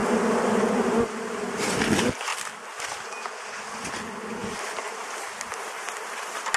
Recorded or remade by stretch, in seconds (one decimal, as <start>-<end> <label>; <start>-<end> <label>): 0.0-6.6 recorded